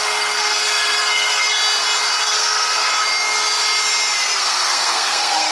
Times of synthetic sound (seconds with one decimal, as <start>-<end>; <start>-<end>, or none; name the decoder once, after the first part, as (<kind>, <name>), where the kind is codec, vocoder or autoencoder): 0.0-1.6 (codec, SNAC); 2.2-2.9; 4.4-5.5